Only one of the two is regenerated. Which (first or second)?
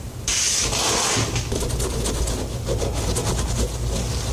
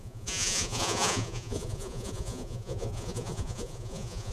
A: second